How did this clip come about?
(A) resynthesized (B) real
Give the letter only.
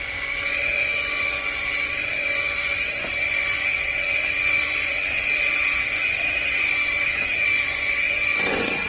A